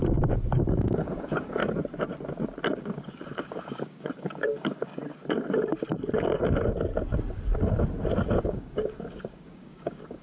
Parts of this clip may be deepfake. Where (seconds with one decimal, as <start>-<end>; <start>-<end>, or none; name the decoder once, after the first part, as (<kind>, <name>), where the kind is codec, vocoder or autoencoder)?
0.0-1.6 (codec, DAC); 2.8-4.9; 8.4-10.2